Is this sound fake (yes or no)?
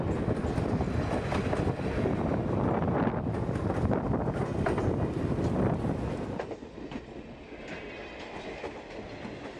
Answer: no